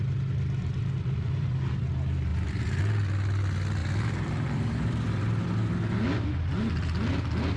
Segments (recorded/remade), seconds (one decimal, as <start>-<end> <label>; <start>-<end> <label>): 0.0-2.3 recorded; 2.3-2.8 remade; 2.8-3.8 recorded; 3.8-5.7 remade; 5.7-7.6 recorded